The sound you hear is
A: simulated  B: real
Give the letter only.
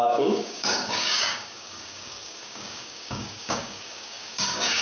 A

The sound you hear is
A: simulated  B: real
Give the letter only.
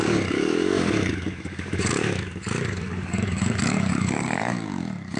A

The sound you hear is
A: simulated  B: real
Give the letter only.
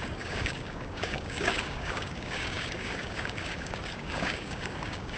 A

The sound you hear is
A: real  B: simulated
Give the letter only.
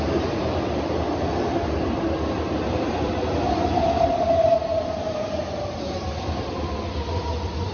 A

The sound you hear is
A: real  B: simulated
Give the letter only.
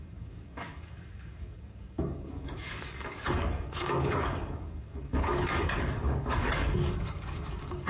B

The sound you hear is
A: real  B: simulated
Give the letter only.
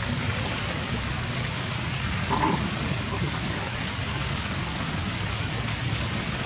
B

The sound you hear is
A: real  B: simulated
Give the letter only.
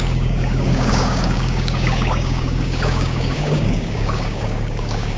B